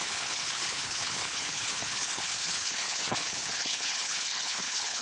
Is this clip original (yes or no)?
no